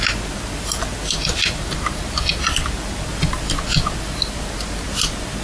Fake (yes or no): no